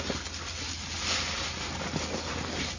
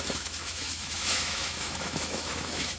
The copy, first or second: second